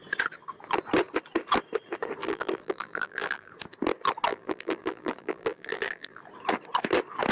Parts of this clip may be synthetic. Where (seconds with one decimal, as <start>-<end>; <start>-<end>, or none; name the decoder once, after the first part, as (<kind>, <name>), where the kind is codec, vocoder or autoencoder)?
2.2-3.5 (vocoder, BigVGAN v2); 4.3-6.2